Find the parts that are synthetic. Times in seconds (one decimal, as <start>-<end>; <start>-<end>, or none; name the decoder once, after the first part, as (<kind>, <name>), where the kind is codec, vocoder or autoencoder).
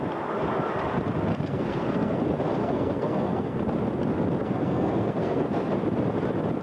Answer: 1.3-2.2 (codec, SNAC); 2.6-3.6; 4.4-5.7